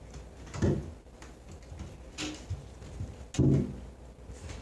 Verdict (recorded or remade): recorded